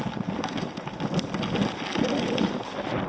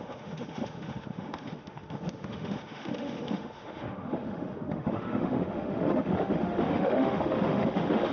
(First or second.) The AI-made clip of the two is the second